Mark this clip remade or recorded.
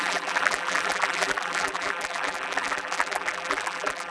remade